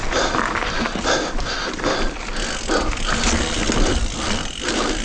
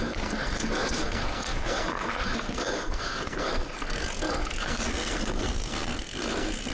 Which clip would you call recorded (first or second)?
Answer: first